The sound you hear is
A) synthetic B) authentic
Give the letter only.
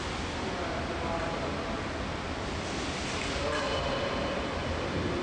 B